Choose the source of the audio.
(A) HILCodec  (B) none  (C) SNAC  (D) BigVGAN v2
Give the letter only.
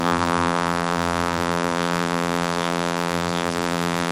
D